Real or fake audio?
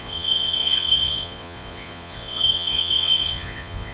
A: fake